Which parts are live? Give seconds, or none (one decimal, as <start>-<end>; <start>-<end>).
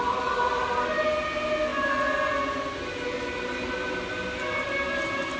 0.0-5.4